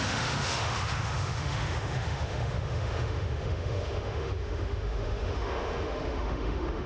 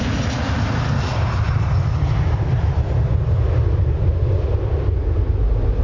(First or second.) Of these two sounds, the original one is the second